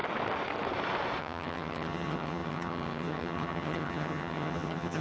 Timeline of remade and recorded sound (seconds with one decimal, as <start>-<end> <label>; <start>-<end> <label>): 0.0-1.2 recorded; 1.2-5.0 remade

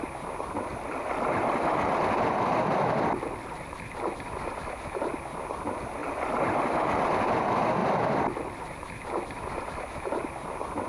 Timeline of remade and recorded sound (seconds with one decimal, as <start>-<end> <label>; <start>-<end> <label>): 0.0-0.7 recorded; 0.7-4.1 remade; 4.1-6.0 recorded; 6.0-6.6 remade; 6.6-7.8 recorded; 7.8-8.6 remade; 8.6-10.9 recorded

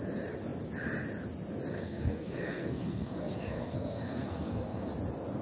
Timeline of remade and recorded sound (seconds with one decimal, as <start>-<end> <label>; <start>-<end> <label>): 0.0-1.7 recorded; 1.7-4.9 remade; 4.9-5.4 recorded

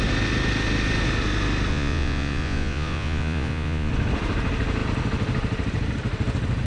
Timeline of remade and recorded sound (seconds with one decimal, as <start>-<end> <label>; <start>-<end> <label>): 0.0-1.7 recorded; 1.7-3.9 remade; 3.9-6.7 recorded

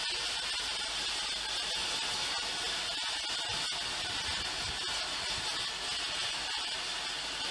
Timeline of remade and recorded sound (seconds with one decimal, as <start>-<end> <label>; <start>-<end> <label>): 0.0-7.5 recorded

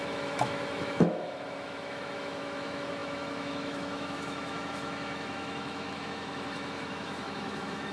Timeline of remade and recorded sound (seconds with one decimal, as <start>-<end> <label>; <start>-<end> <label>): 0.0-7.9 remade

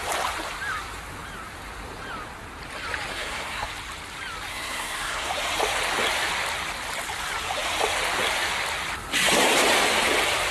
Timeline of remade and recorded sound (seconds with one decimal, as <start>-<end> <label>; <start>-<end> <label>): 0.0-3.1 recorded; 3.1-3.7 remade; 3.7-4.5 recorded; 4.5-5.3 remade; 5.3-10.5 recorded